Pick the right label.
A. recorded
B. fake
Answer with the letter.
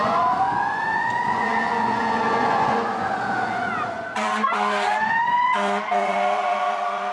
B